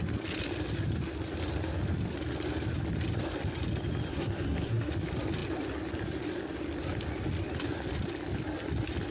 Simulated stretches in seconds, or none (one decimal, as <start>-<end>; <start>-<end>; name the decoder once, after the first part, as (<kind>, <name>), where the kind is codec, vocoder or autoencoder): 4.1-4.9 (codec, SNAC)

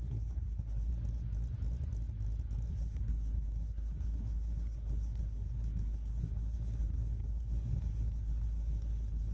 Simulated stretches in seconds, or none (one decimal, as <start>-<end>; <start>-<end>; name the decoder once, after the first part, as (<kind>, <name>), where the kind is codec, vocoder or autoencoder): 0.0-0.9 (codec, SNAC); 2.7-9.3

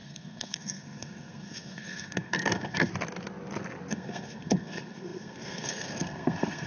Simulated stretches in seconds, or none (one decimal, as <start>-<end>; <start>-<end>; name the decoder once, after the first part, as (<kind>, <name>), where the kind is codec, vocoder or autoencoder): 0.0-2.9 (codec, SNAC); 3.9-6.7

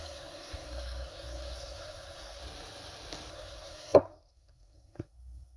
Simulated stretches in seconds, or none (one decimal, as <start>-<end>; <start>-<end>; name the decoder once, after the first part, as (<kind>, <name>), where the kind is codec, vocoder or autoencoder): 0.0-2.4 (codec, SNAC); 3.3-5.6

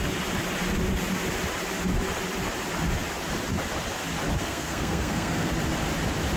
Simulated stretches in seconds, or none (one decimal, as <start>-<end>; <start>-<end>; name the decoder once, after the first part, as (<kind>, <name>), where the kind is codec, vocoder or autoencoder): 4.4-5.5 (codec, SNAC)

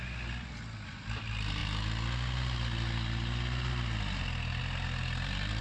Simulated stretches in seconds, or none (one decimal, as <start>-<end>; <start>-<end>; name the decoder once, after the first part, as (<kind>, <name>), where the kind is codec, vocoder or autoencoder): none